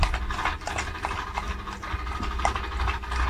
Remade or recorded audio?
recorded